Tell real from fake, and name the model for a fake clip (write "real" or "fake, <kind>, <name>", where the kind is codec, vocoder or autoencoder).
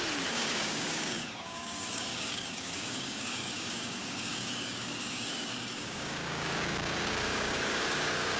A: fake, codec, DAC